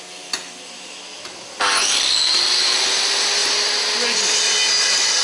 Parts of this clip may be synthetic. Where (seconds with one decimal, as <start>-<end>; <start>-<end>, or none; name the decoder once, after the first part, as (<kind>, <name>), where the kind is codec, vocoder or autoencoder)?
none